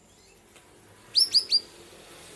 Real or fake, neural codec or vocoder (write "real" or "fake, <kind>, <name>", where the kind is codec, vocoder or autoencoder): real